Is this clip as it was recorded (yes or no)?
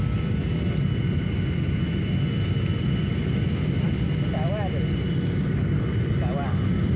yes